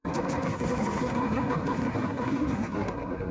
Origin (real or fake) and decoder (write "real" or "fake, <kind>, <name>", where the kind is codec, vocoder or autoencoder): fake, codec, SNAC